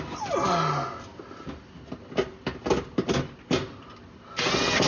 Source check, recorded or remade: recorded